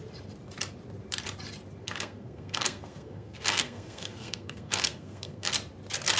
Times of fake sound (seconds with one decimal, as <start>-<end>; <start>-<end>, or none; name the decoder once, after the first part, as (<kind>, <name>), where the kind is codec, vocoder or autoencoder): 1.8-5.5 (codec, SNAC)